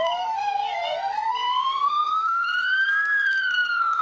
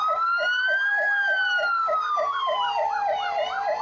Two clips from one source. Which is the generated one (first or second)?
first